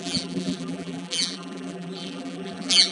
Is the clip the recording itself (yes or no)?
no